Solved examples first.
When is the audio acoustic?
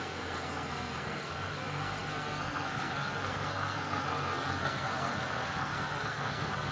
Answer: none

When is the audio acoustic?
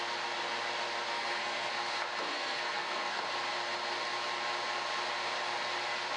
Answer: 0.0-1.1; 1.7-2.3; 3.2-6.2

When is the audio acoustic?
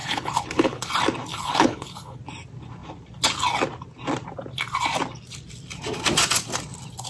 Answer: 0.9-1.3; 2.2-7.1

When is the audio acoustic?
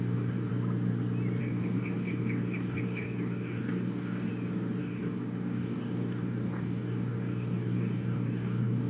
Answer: 0.5-1.4; 4.3-4.8